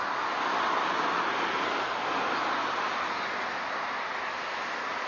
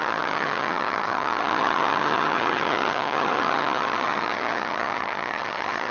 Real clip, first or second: first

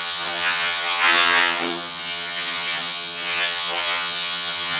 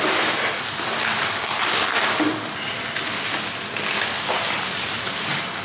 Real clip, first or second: second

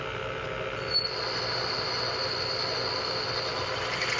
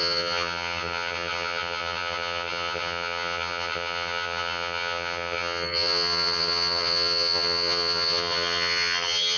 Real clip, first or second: first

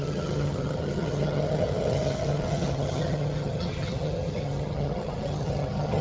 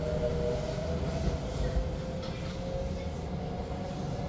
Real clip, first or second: second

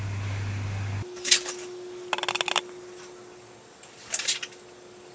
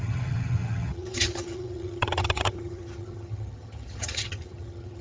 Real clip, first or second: first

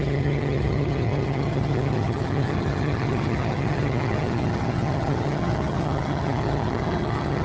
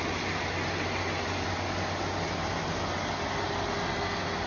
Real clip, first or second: second